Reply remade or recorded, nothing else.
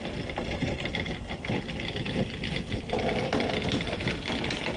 recorded